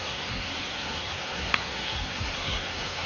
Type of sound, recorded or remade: remade